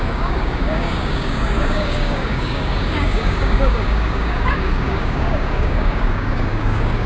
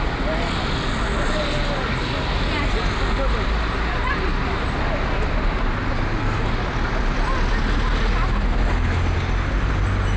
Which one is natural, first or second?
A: second